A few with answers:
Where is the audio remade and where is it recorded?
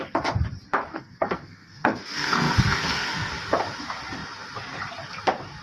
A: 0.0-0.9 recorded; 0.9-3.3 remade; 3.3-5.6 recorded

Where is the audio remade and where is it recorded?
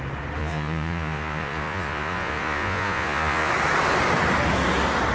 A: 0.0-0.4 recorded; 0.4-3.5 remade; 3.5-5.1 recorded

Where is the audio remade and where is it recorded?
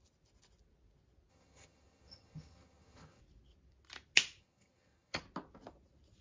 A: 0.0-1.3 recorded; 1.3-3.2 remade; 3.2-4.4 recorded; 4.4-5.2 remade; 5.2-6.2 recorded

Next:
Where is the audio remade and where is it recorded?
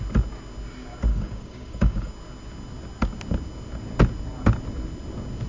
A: 0.0-1.1 recorded; 1.1-2.1 remade; 2.1-5.5 recorded